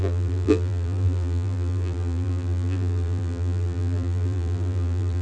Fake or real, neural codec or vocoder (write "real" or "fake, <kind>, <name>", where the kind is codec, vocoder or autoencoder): fake, vocoder, BigVGAN v2